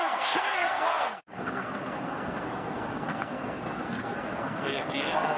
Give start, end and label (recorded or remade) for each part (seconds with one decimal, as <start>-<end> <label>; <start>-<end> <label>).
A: 0.0-5.4 remade